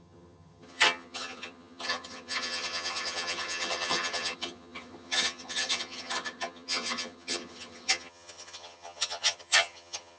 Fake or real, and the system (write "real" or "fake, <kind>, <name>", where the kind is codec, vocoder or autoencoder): fake, vocoder, HiFi-GAN